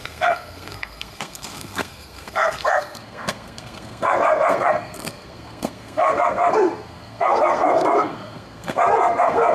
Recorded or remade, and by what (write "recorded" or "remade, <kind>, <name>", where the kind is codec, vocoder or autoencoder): remade, codec, SNAC